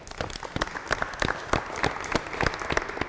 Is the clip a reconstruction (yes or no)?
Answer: no